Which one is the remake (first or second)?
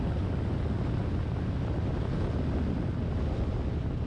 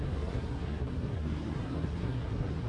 second